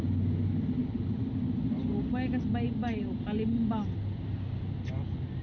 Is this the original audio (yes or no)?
yes